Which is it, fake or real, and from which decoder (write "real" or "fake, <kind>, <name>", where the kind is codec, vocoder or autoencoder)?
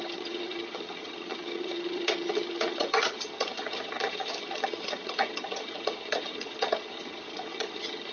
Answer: fake, vocoder, HiFi-GAN